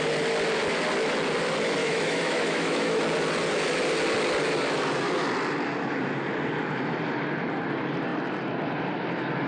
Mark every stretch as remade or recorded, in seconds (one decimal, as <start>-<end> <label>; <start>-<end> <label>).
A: 0.0-1.8 recorded; 1.8-3.0 remade; 3.0-9.5 recorded